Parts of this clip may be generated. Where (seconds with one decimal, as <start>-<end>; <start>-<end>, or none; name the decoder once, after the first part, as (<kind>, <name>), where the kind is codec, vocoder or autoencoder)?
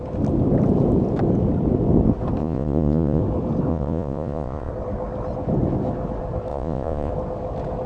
2.4-3.2 (vocoder, Vocos); 3.7-4.7; 6.5-7.1